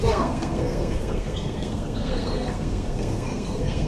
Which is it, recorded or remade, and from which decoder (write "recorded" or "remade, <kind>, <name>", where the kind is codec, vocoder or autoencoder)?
remade, codec, SNAC